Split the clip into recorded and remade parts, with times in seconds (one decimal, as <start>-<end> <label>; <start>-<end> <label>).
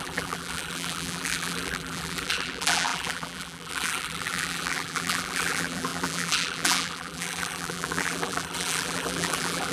0.0-9.7 remade